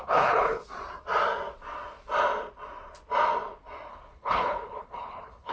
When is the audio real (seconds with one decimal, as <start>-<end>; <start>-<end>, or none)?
0.6-3.9